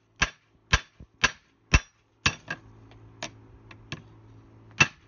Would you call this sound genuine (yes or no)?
yes